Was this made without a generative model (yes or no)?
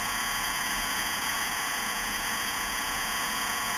no